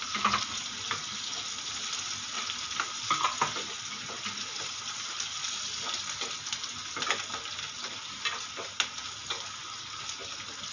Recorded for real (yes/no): yes